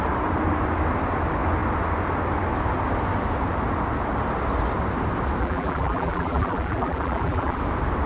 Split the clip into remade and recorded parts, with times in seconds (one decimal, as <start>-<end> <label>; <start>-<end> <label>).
0.0-5.4 recorded; 5.4-7.6 remade; 7.6-8.1 recorded

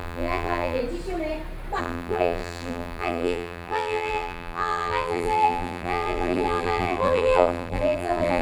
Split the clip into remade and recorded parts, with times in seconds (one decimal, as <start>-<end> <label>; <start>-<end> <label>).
0.0-0.8 remade; 0.8-1.8 recorded; 1.8-8.4 remade